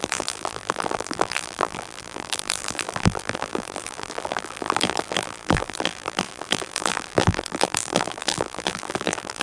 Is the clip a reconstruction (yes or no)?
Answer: yes